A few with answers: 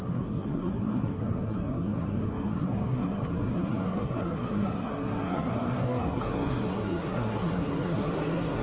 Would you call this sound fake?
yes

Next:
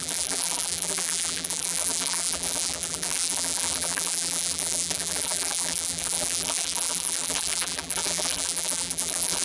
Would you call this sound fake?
yes